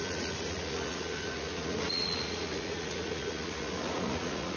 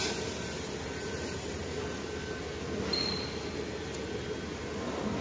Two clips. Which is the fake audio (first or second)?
first